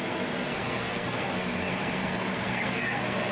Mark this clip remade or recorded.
remade